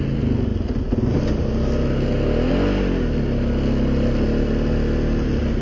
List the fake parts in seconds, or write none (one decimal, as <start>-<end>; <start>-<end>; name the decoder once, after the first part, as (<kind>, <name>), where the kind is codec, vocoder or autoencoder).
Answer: none